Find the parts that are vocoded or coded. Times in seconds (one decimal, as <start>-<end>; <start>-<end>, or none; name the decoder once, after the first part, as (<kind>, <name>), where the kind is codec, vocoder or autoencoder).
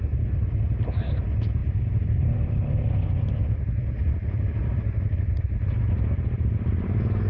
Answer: 1.6-2.2 (vocoder, BigVGAN v2); 4.6-5.8